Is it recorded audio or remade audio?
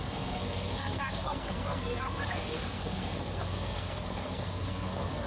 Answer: remade